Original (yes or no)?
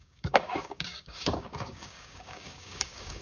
no